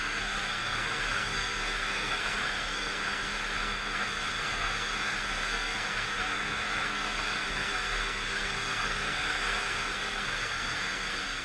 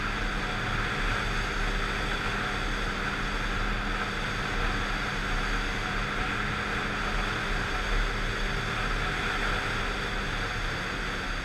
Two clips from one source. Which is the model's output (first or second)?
first